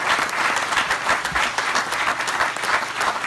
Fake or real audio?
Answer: real